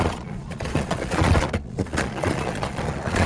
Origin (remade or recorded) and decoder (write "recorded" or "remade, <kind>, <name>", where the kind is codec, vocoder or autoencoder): remade, vocoder, Vocos